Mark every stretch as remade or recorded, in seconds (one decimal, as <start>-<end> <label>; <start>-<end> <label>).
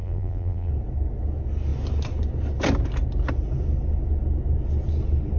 0.0-0.7 remade; 0.7-5.4 recorded